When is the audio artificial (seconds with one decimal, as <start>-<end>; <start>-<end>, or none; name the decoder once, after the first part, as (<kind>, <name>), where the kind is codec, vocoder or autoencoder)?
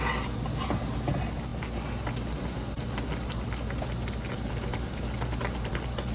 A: none